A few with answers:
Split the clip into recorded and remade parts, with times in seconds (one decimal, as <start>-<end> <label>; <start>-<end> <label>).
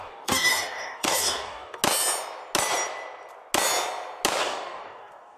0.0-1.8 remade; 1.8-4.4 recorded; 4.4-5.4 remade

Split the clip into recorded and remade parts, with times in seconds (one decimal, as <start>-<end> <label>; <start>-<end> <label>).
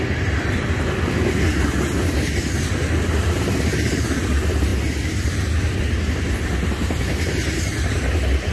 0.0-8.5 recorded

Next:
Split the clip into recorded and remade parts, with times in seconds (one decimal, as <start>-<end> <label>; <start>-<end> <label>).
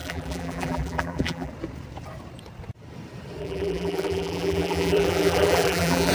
0.0-1.5 remade; 1.5-3.4 recorded; 3.4-6.1 remade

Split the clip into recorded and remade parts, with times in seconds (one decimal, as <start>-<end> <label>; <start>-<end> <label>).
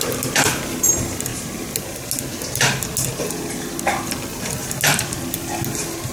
0.0-6.1 recorded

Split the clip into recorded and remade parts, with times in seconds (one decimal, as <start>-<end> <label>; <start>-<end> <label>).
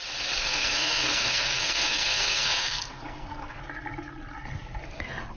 0.0-0.4 recorded; 0.4-3.6 remade; 3.6-5.4 recorded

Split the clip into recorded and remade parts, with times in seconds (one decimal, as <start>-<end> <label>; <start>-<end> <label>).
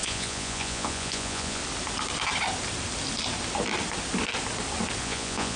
0.0-1.6 remade; 1.6-5.0 recorded; 5.0-5.6 remade